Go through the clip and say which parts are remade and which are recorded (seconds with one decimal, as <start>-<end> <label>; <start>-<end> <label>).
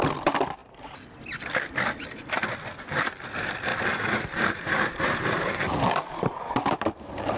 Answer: 0.0-3.7 recorded; 3.7-7.4 remade